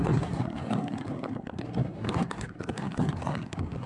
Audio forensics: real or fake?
fake